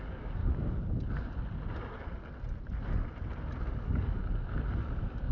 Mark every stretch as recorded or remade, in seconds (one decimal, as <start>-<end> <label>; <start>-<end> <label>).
0.0-0.4 remade; 0.4-3.6 recorded; 3.6-4.2 remade; 4.2-4.7 recorded; 4.7-5.3 remade